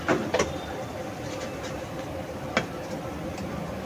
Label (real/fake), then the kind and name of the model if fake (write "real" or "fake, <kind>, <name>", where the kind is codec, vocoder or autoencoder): real